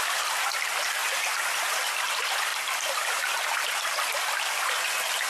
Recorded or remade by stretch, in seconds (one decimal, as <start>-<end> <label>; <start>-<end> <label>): 0.0-5.3 recorded